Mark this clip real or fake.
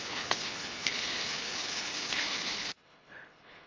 fake